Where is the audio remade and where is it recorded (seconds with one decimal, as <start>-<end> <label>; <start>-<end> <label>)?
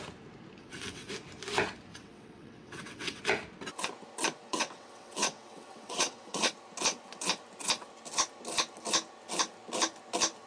0.0-0.6 recorded; 0.6-1.1 remade; 1.1-1.9 recorded; 1.9-3.2 remade; 3.2-4.5 recorded; 4.5-6.5 remade; 6.5-10.5 recorded